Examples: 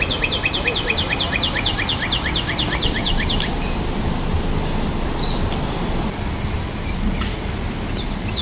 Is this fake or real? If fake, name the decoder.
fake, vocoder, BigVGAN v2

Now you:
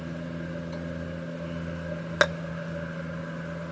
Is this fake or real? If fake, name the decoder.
real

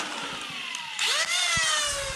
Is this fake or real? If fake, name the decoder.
real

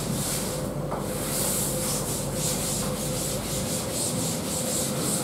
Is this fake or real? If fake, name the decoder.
real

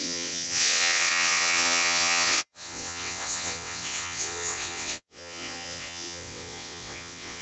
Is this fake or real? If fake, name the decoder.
fake, vocoder, WaveNeXt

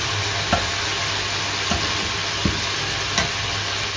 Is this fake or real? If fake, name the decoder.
real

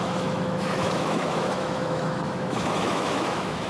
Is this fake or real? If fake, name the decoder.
fake, autoencoder, DAC-VAE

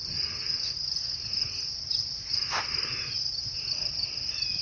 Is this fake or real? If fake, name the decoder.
fake, vocoder, BigVGAN v2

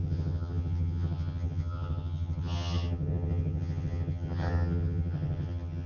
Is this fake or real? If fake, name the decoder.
fake, vocoder, HiFi-GAN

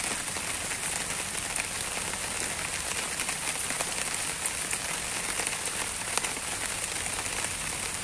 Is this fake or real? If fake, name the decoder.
real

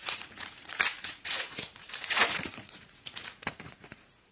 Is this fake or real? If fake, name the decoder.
fake, vocoder, Vocos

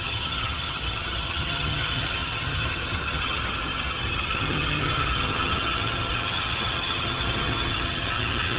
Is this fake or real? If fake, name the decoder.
fake, vocoder, HiFi-GAN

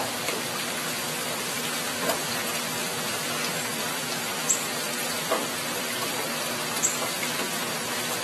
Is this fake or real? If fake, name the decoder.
real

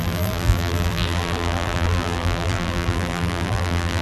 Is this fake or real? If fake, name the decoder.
fake, vocoder, BigVGAN v2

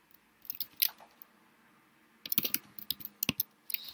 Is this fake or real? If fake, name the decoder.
real